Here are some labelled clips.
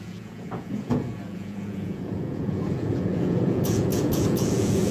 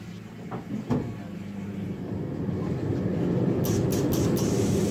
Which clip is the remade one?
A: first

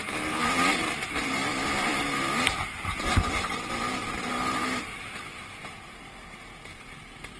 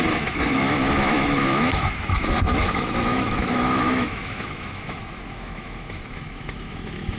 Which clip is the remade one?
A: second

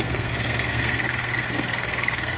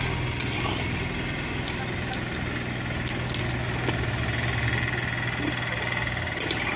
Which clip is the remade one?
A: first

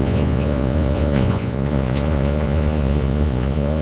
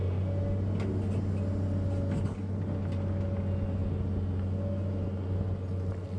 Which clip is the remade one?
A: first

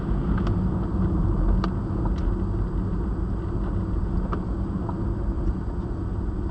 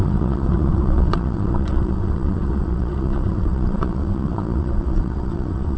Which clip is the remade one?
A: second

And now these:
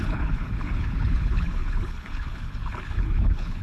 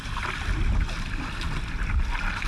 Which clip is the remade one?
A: first